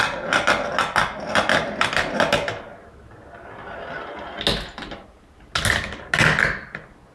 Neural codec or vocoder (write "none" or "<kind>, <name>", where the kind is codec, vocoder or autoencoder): none